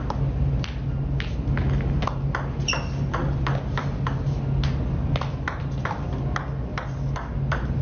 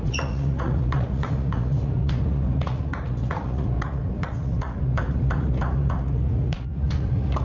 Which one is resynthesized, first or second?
second